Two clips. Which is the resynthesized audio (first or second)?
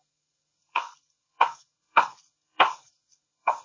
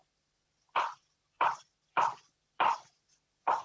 first